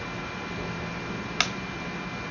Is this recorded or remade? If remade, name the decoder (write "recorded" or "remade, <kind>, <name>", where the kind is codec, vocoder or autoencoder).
recorded